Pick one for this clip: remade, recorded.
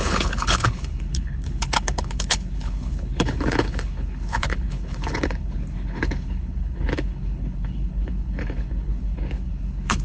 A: remade